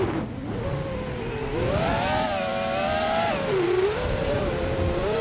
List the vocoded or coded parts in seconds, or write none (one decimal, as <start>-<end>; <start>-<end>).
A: 0.0-0.4; 3.5-5.2